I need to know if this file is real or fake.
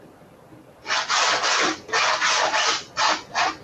real